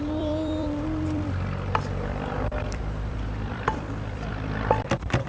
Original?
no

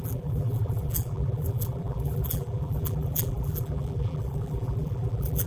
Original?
no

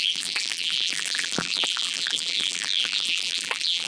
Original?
no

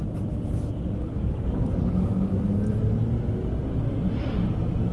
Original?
yes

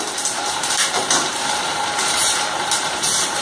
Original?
no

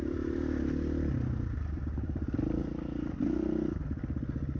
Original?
yes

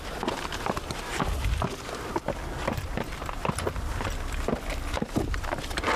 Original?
yes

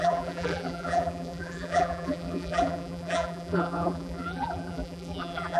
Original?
no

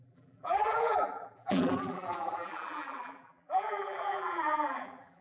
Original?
no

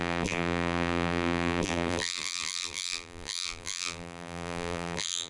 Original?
no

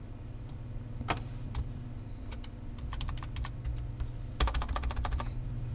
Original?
no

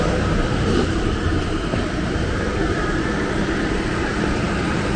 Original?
no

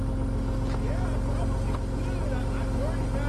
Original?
yes